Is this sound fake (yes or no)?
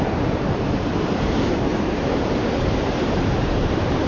yes